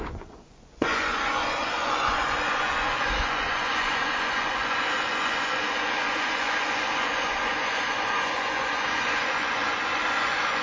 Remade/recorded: remade